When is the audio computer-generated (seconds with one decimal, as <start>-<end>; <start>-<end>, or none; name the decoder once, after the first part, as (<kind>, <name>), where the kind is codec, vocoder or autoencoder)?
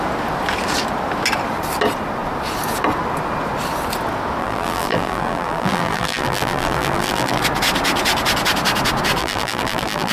4.4-7.4 (vocoder, BigVGAN v2); 9.2-10.1